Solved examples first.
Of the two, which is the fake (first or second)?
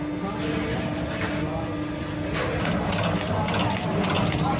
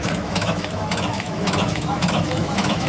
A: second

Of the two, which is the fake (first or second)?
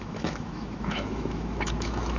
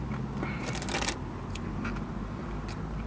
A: first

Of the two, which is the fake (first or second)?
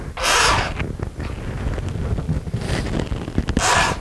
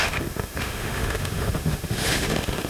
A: second